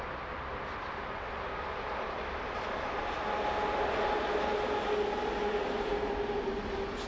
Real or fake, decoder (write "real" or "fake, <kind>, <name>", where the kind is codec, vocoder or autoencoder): real